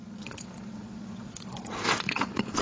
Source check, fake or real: fake